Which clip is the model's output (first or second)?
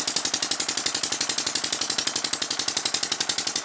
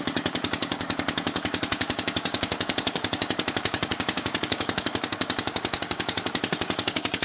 second